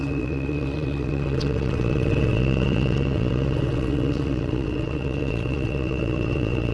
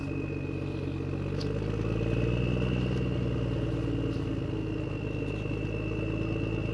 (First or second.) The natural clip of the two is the second